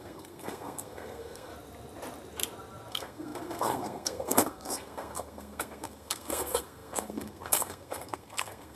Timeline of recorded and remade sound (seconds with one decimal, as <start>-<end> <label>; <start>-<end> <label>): 0.0-1.5 remade; 1.5-2.9 recorded; 2.9-8.8 remade